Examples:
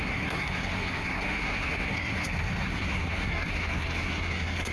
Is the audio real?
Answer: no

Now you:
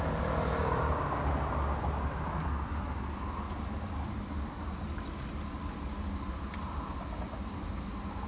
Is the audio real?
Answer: yes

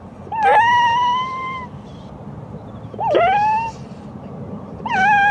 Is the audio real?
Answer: yes